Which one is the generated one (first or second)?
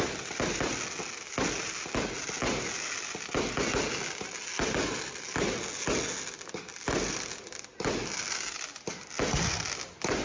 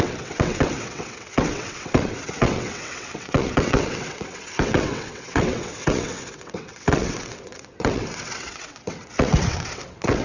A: second